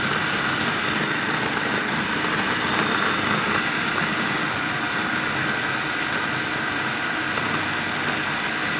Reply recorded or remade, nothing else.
recorded